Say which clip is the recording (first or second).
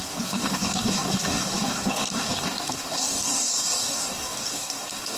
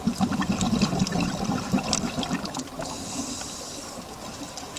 second